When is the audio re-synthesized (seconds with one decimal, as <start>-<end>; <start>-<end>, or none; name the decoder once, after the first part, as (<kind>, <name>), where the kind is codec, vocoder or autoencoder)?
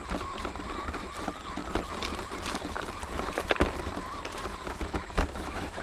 4.5-5.8 (autoencoder, DAC-VAE)